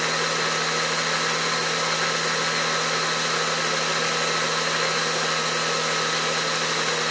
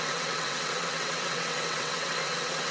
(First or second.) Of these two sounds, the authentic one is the first